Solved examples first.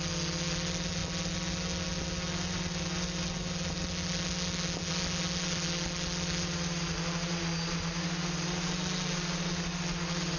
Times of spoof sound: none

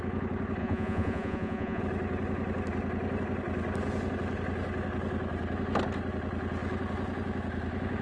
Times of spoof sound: 0.6-1.8

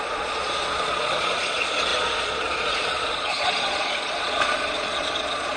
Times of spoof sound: 0.0-5.6

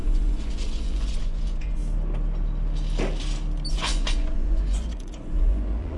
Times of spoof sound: 0.0-1.8; 3.7-6.0

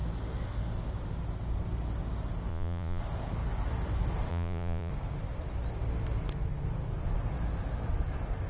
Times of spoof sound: 2.5-3.0; 4.3-4.9

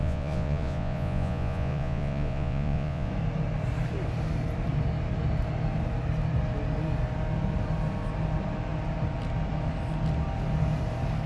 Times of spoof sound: 0.0-3.1

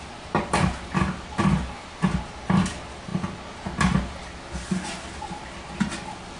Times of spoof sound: none